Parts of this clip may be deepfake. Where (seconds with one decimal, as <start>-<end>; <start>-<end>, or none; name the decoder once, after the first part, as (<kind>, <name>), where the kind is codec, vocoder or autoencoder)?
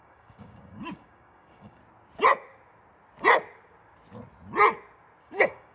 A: 0.0-1.8 (codec, DAC); 5.2-5.7